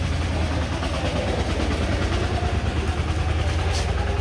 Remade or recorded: recorded